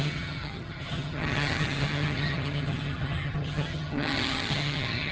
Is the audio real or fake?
fake